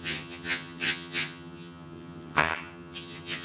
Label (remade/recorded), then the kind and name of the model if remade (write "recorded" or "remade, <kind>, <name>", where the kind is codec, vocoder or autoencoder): remade, vocoder, HiFi-GAN